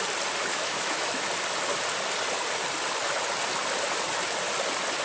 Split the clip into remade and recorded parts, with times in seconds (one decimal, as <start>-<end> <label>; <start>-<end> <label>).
0.0-0.5 recorded; 0.5-1.3 remade; 1.3-5.0 recorded